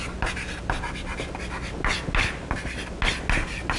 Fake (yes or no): no